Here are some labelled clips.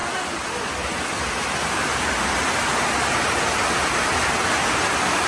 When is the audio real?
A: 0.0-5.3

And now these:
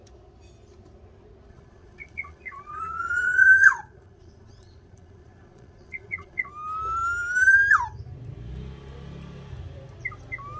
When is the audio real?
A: 0.0-1.5; 6.5-10.6

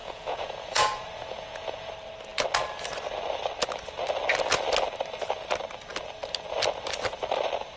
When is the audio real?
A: 1.9-7.8

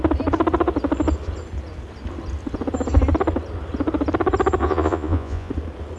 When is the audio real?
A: 0.0-4.6; 5.5-6.0